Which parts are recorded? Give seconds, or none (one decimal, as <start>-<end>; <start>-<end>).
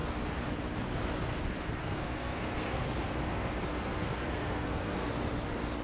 0.0-1.8; 5.1-5.8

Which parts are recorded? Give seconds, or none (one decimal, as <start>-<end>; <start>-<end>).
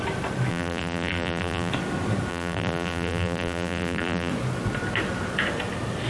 0.0-0.5; 1.7-2.3; 4.3-6.1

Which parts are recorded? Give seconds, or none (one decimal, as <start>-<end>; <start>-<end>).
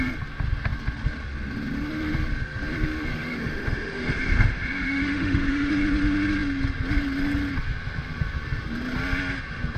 0.0-3.1; 5.7-9.8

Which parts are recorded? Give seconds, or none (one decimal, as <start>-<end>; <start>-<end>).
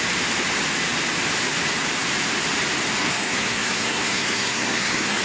0.0-3.0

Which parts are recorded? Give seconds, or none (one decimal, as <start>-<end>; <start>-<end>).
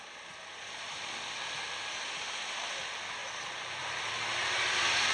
0.0-5.1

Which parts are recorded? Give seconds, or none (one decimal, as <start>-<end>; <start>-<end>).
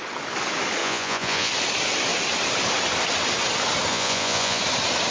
0.0-0.8; 1.5-3.9; 4.6-5.1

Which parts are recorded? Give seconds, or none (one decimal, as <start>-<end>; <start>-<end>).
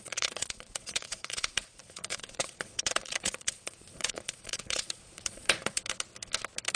5.8-6.7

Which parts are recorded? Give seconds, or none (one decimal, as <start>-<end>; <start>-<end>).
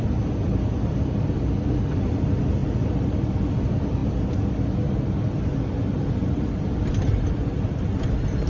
4.0-6.0